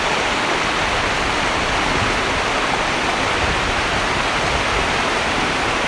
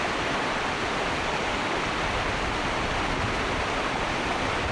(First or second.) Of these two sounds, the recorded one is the first